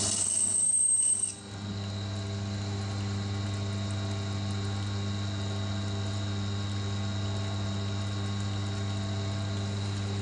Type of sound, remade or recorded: recorded